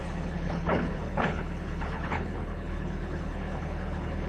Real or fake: fake